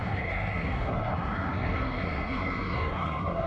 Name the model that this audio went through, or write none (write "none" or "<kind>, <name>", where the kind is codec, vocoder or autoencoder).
codec, SNAC